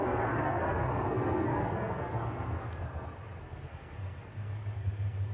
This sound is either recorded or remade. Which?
remade